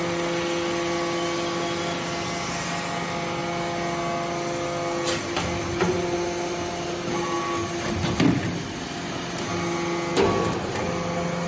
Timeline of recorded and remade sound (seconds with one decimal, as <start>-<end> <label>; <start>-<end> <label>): 0.0-11.5 recorded

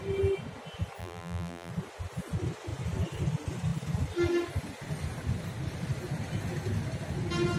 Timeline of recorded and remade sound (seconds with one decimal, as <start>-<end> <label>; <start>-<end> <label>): 0.0-1.0 recorded; 1.0-1.7 remade; 1.7-7.6 recorded

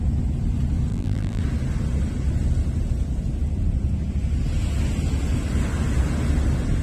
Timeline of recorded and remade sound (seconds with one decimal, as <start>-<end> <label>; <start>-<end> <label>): 0.0-0.9 recorded; 0.9-1.4 remade; 1.4-6.8 recorded

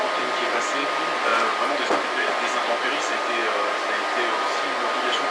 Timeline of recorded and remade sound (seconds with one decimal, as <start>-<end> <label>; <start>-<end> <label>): 0.0-5.3 recorded